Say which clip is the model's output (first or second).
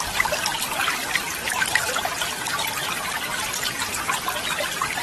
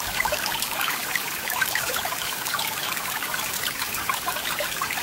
second